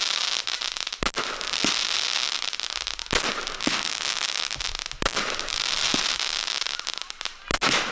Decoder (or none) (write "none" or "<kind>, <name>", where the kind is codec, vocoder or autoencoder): none